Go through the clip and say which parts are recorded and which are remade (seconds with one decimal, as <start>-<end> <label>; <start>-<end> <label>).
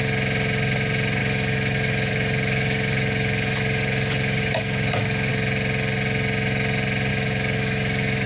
0.0-1.2 recorded; 1.2-5.3 remade; 5.3-7.1 recorded; 7.1-8.3 remade